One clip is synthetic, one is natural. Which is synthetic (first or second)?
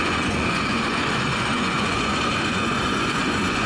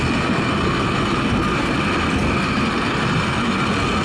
first